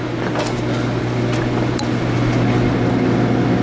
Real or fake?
real